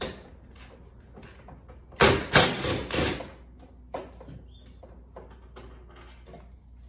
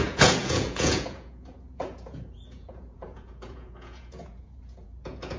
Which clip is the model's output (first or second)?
second